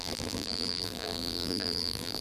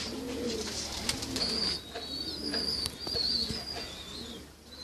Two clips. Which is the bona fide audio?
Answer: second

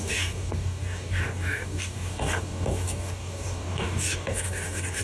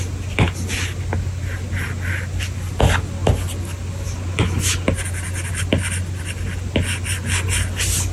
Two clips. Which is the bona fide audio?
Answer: second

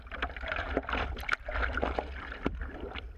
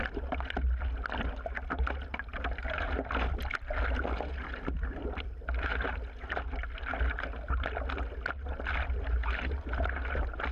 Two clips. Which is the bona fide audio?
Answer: second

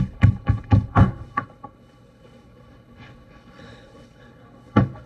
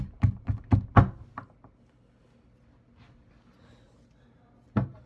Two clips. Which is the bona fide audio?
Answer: second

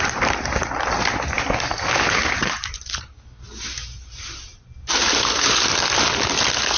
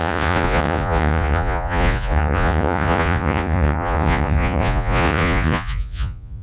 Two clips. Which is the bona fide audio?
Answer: first